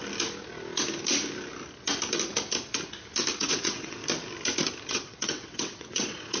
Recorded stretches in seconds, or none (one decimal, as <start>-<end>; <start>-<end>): 0.0-3.3; 4.0-4.9